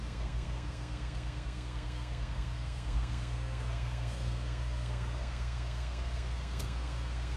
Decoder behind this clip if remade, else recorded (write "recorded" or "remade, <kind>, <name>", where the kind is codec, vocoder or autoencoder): remade, codec, SNAC